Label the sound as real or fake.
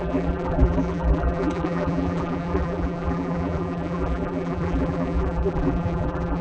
fake